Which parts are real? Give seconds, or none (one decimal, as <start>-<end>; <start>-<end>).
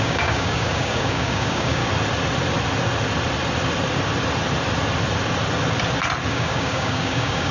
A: 1.8-6.3